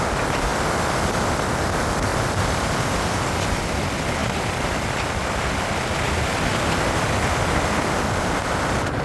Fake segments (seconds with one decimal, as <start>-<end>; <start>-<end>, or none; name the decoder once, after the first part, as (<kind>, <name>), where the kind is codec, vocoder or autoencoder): 2.1-2.6 (vocoder, BigVGAN v2)